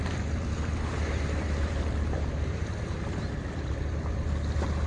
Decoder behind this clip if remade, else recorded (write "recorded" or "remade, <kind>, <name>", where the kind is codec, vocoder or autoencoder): remade, vocoder, BigVGAN v2